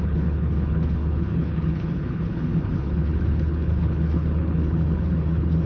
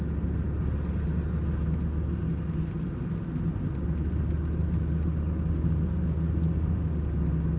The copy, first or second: first